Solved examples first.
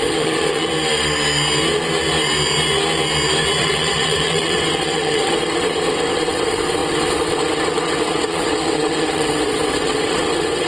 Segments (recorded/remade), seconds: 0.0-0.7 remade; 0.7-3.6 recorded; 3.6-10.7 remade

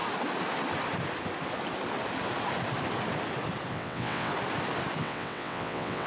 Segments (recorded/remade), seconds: 0.0-3.7 recorded; 3.7-4.3 remade; 4.3-5.0 recorded; 5.0-6.1 remade